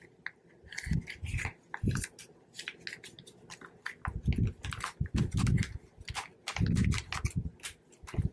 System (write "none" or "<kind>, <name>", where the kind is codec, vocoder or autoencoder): none